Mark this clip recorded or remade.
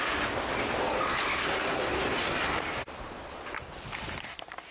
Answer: remade